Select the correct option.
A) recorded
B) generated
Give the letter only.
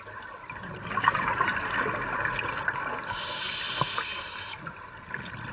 A